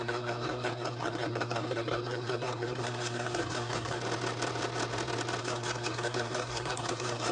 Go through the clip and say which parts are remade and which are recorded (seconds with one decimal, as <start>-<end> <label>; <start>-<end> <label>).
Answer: 0.0-4.0 remade; 4.0-5.4 recorded; 5.4-7.3 remade